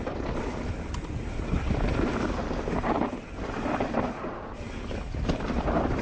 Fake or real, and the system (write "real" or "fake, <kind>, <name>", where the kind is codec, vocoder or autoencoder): real